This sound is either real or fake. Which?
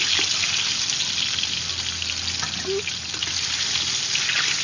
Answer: real